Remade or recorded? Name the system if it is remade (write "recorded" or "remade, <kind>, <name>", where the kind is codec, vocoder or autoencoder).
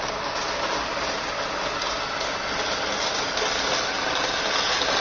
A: recorded